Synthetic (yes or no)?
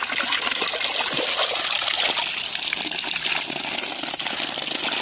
no